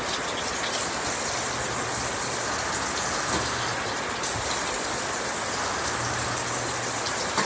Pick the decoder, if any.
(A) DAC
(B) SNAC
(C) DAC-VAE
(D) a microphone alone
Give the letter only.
D